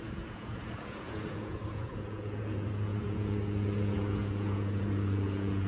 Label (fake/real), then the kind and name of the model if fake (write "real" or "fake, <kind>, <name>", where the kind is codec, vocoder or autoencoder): fake, vocoder, Vocos